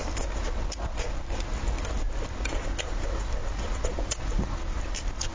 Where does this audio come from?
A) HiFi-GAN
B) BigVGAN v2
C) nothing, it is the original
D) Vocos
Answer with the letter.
C